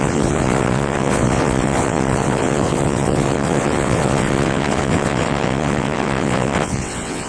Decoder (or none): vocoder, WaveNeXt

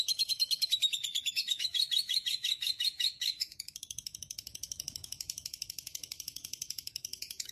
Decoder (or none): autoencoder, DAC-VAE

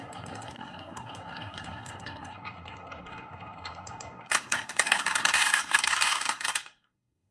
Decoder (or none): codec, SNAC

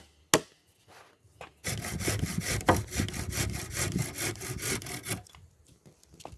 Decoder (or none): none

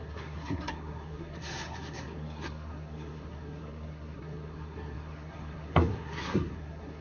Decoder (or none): codec, SNAC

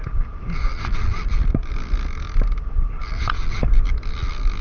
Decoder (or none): none